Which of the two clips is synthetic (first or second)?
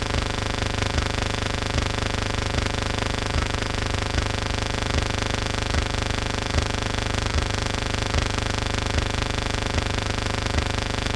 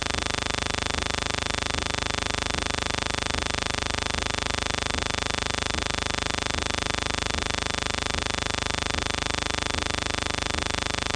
first